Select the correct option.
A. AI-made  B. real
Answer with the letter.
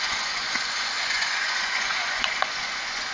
A